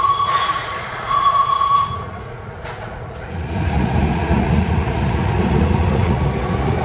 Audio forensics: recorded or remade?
remade